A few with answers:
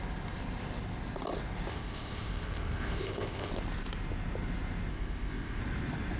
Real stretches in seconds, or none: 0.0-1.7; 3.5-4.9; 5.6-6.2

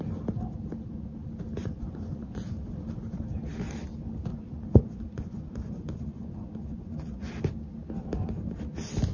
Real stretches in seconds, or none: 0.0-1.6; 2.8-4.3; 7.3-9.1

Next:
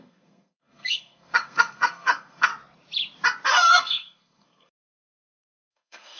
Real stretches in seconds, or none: 2.5-3.5

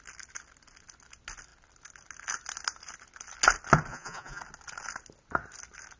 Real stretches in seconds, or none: 0.0-3.9; 4.4-6.0

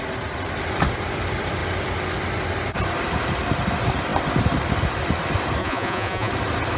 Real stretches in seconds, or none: 0.0-5.6; 6.3-6.8